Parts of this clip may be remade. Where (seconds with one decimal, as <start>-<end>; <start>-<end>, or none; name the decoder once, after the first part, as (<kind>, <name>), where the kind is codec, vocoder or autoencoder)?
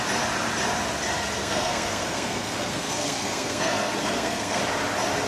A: 1.4-4.6 (codec, SNAC)